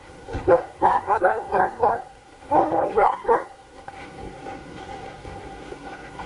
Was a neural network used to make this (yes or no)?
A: yes